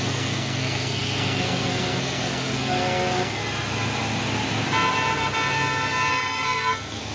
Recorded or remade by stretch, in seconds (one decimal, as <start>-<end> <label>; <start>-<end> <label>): 0.0-3.4 remade; 3.4-6.1 recorded; 6.1-7.1 remade